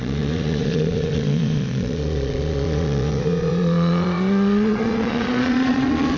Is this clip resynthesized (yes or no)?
yes